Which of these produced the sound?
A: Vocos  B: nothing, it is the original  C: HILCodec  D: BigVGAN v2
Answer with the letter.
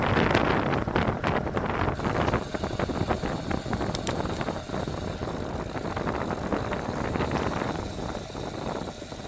B